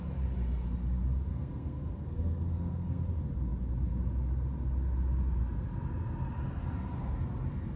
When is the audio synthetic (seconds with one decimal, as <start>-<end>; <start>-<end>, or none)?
1.3-3.0

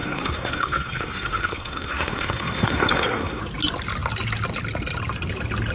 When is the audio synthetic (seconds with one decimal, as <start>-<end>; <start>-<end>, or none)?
0.0-3.4

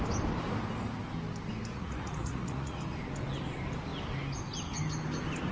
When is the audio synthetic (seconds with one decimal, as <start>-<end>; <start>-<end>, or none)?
1.7-2.8

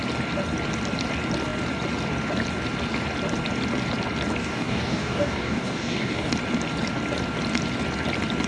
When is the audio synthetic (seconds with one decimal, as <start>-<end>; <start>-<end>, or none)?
4.4-6.3

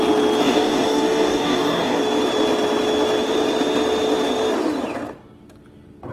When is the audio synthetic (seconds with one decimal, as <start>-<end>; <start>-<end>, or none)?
0.4-2.0